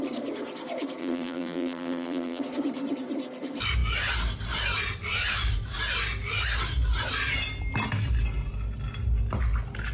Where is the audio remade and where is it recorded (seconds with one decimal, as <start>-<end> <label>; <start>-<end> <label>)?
0.0-1.0 recorded; 1.0-2.4 remade; 2.4-9.9 recorded